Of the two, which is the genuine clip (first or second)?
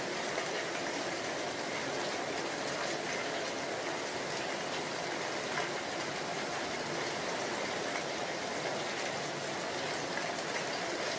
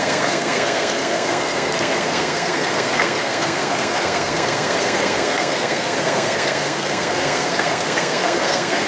first